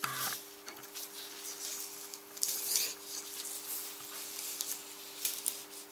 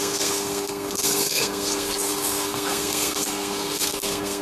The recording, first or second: first